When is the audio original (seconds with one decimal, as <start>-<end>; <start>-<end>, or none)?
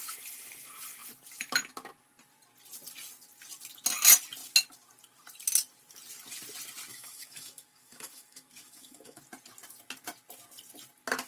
0.0-6.9; 9.2-11.3